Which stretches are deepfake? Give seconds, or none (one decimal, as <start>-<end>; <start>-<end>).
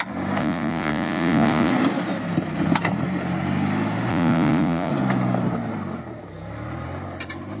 0.4-1.7; 4.1-4.9